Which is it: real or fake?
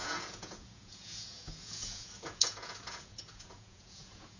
fake